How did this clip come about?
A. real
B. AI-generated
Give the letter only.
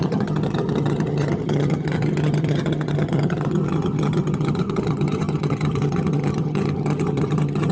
B